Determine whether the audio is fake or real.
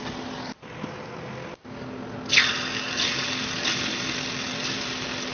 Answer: real